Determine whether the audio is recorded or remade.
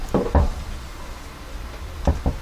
remade